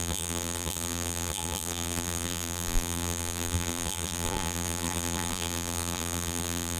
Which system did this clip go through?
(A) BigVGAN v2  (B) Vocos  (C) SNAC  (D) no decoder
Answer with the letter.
A